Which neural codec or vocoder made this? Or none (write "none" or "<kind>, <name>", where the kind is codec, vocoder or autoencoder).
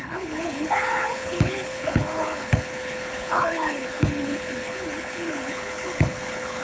codec, HILCodec